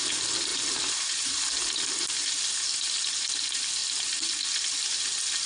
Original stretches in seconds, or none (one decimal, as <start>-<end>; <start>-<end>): 0.0-0.5; 1.5-5.5